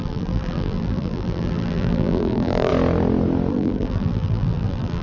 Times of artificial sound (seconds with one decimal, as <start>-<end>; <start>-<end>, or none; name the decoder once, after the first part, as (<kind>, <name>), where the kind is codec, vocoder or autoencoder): 0.0-2.7 (vocoder, BigVGAN v2); 3.5-5.0